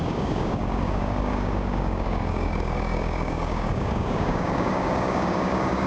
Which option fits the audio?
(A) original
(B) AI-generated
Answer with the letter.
B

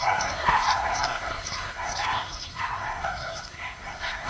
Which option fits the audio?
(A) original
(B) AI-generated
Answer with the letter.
B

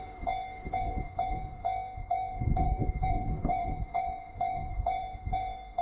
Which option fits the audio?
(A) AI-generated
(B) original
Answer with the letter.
A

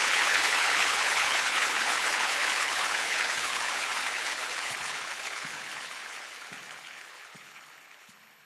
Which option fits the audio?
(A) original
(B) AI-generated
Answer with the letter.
B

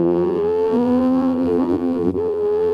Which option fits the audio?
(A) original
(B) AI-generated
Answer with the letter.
B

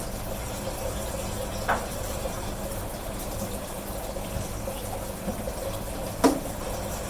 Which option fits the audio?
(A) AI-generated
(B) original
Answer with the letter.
B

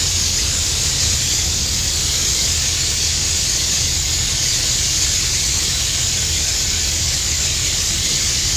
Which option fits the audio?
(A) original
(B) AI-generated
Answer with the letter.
B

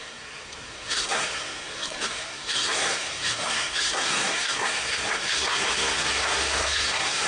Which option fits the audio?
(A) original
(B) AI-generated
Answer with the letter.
B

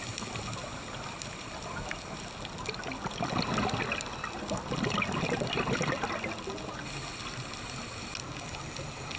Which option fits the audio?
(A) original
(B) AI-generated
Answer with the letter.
A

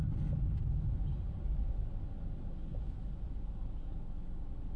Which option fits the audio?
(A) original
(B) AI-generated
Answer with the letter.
A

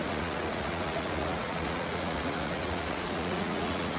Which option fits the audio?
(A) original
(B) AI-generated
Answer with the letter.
B